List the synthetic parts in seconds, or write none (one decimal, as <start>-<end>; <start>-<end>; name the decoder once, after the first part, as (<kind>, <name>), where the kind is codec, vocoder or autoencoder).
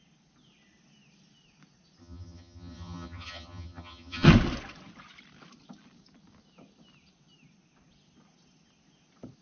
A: 2.0-4.3 (vocoder, HiFi-GAN)